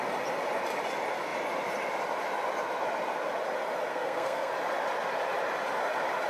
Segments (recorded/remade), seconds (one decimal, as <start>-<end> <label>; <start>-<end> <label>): 0.0-3.9 recorded; 3.9-4.5 remade; 4.5-6.3 recorded